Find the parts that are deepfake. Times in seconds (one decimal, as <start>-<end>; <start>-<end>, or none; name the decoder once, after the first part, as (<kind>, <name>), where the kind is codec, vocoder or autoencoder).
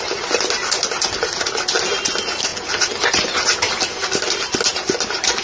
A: none